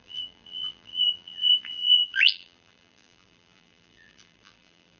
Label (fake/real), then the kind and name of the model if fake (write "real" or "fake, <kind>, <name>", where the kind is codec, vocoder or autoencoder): fake, vocoder, BigVGAN v2